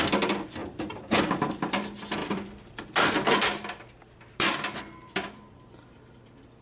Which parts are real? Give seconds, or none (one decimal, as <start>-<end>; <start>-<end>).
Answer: 0.0-0.6; 1.5-2.2